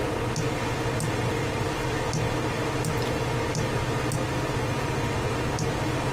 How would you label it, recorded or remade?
recorded